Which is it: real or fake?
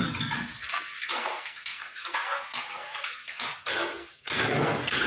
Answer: fake